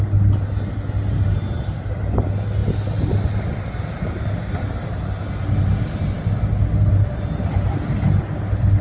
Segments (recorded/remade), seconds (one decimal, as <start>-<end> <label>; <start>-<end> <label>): 0.0-8.8 recorded

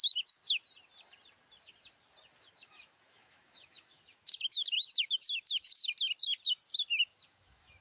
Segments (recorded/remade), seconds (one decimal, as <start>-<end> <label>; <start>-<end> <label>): 0.0-0.4 remade; 0.4-2.4 recorded; 2.4-5.8 remade; 5.8-7.0 recorded; 7.0-7.8 remade

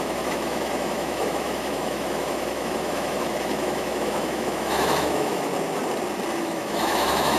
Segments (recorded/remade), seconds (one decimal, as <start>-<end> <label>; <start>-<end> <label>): 0.0-5.5 remade; 5.5-6.4 recorded; 6.4-7.4 remade

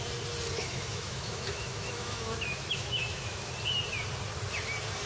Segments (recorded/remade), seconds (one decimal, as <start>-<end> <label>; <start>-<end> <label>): 0.0-0.6 recorded; 0.6-3.5 remade; 3.5-5.1 recorded

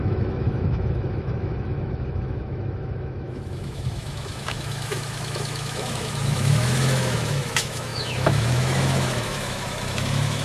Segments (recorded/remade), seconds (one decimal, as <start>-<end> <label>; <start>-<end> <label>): 0.0-10.4 remade

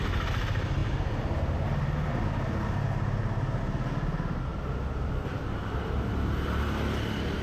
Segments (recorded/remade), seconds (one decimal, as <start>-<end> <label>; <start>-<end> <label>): 0.0-7.4 recorded

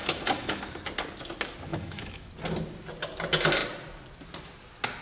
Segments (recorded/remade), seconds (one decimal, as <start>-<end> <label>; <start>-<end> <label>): 0.0-0.6 remade; 0.6-1.7 recorded; 1.7-2.3 remade; 2.3-5.0 recorded